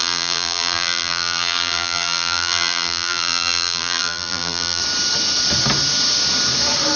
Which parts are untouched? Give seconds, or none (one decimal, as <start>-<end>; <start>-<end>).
4.8-7.0